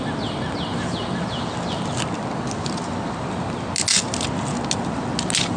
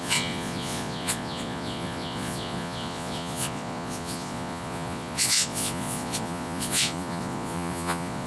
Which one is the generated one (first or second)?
second